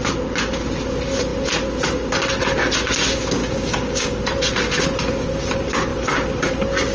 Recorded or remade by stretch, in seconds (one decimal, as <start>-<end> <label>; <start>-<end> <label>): 0.0-3.4 recorded; 3.4-4.2 remade; 4.2-6.9 recorded